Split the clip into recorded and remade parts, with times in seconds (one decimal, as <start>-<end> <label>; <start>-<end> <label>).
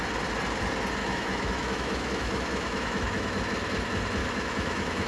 0.0-1.0 recorded; 1.0-3.4 remade; 3.4-4.2 recorded; 4.2-5.1 remade